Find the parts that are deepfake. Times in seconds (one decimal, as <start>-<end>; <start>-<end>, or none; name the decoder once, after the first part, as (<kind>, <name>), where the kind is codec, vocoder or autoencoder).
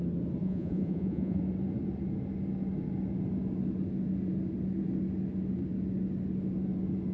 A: 0.4-1.4 (vocoder, Vocos)